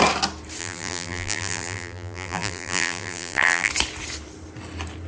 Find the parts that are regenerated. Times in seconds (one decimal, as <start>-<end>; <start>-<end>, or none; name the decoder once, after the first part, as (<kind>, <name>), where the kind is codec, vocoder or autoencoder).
0.6-3.7 (vocoder, BigVGAN v2)